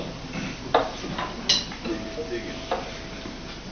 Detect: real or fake real